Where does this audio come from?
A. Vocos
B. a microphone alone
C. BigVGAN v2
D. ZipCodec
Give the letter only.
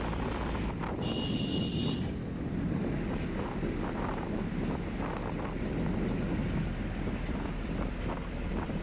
B